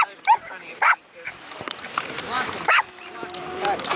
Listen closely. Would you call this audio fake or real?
fake